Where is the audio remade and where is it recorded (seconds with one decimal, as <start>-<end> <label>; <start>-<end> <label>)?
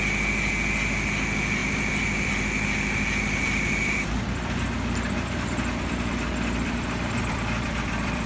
0.0-1.6 recorded; 1.6-2.3 remade; 2.3-3.4 recorded; 3.4-8.3 remade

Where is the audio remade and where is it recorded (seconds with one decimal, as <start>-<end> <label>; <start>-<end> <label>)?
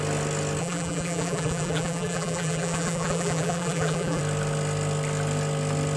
0.0-0.6 recorded; 0.6-4.2 remade; 4.2-6.0 recorded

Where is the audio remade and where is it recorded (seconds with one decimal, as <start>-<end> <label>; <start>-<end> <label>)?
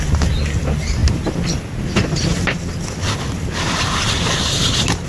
0.0-5.1 recorded